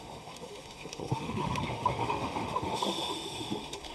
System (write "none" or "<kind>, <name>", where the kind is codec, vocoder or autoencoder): autoencoder, DAC-VAE